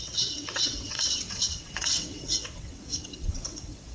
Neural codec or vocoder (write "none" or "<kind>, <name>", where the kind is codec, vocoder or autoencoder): vocoder, WaveNeXt